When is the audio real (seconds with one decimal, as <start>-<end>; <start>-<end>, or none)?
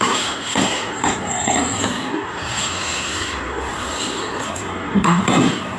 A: none